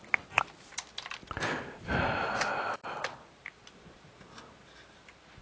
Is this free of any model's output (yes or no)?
yes